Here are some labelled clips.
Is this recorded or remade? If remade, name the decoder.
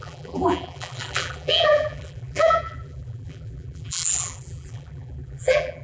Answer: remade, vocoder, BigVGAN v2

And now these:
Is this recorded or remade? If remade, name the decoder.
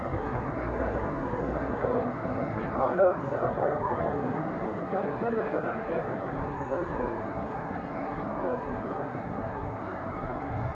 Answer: remade, codec, SNAC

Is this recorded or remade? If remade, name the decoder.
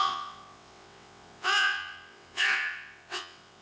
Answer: remade, vocoder, WaveNeXt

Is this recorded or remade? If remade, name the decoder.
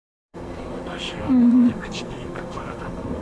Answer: remade, codec, SNAC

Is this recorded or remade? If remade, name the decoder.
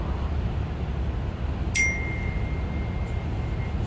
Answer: recorded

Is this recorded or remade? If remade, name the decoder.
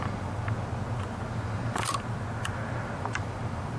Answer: recorded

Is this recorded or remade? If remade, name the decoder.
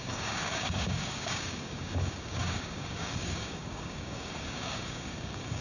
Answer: remade, codec, DAC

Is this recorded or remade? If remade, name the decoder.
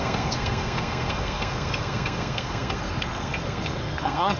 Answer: remade, codec, SNAC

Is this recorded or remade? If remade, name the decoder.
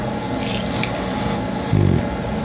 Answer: recorded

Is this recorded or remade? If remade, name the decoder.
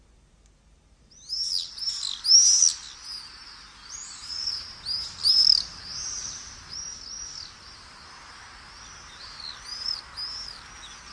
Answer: recorded